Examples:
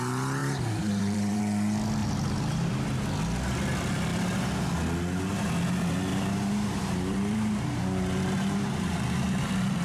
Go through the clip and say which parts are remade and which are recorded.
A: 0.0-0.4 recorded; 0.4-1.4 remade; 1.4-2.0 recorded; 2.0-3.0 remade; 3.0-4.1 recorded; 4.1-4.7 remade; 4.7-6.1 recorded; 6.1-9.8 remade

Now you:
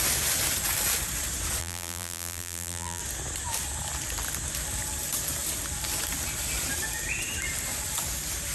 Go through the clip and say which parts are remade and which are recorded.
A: 0.0-1.6 recorded; 1.6-3.0 remade; 3.0-8.5 recorded

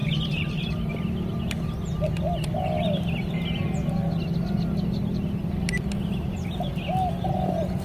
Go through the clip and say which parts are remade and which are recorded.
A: 0.0-0.9 remade; 0.9-7.8 recorded

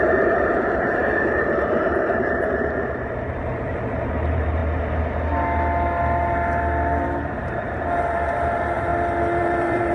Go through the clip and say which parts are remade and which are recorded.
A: 0.0-4.6 remade; 4.6-7.4 recorded; 7.4-8.9 remade; 8.9-9.4 recorded; 9.4-9.9 remade

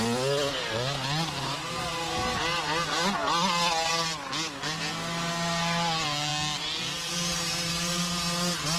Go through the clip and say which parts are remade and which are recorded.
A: 0.0-8.8 recorded

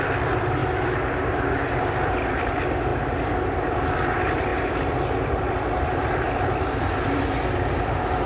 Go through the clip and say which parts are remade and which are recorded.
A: 0.0-0.6 remade; 0.6-1.2 recorded; 1.2-2.9 remade; 2.9-3.7 recorded; 3.7-8.3 remade

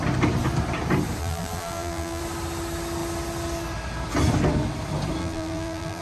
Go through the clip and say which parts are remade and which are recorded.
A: 0.0-1.2 recorded; 1.2-2.2 remade; 2.2-5.2 recorded; 5.2-6.0 remade